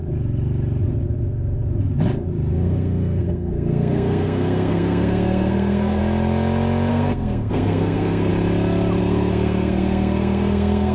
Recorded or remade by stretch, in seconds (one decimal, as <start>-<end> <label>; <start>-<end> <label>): 0.0-2.5 recorded; 2.5-6.0 remade; 6.0-6.9 recorded; 6.9-8.3 remade; 8.3-9.0 recorded; 9.0-10.9 remade